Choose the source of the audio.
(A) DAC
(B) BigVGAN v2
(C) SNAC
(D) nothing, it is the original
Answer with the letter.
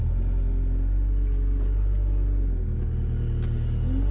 D